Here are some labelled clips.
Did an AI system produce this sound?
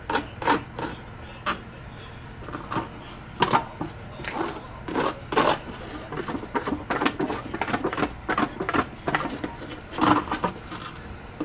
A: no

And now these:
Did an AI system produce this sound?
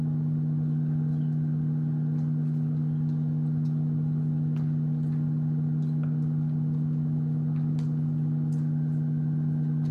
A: no